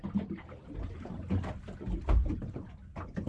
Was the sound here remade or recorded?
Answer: recorded